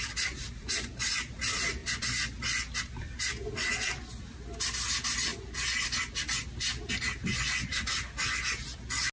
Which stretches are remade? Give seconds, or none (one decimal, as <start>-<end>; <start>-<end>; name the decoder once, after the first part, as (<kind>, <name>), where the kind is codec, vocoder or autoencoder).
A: none